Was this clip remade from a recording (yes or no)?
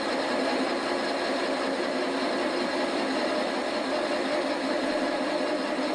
no